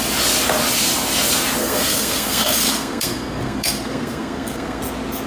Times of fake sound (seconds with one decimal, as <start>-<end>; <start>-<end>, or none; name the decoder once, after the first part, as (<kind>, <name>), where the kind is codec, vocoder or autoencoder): 1.6-4.8 (codec, SNAC)